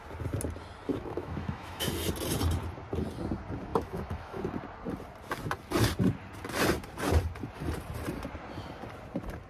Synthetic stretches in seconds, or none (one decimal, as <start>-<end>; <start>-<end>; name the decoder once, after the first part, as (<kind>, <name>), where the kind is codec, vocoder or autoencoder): 0.9-1.9 (autoencoder, DAC-VAE); 3.7-4.4